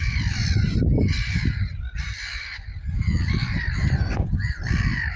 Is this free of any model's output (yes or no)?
yes